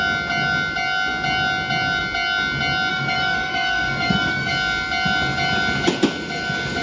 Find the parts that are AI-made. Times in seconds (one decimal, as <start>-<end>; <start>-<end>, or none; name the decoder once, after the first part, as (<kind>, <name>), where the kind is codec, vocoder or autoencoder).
2.9-4.5 (autoencoder, DAC-VAE)